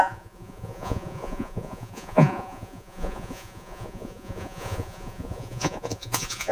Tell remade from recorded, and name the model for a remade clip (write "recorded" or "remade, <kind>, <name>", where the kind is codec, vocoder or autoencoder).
remade, vocoder, Vocos